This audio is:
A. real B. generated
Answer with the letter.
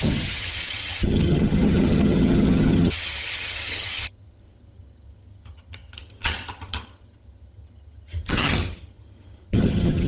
B